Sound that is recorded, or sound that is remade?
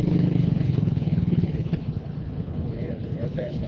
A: remade